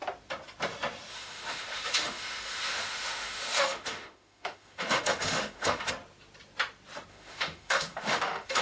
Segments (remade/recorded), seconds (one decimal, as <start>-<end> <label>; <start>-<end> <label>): 0.0-1.1 recorded; 1.1-5.9 remade; 5.9-7.1 recorded; 7.1-8.6 remade